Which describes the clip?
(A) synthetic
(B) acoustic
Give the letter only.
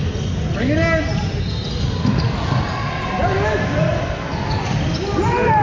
B